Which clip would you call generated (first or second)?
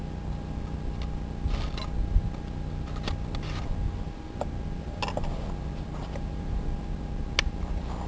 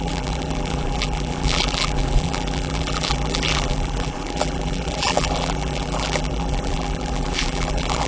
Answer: second